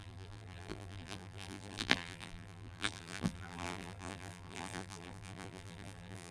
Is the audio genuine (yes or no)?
no